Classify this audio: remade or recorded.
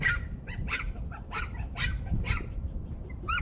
remade